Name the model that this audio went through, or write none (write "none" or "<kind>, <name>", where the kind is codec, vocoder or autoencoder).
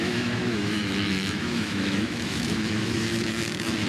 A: autoencoder, DAC-VAE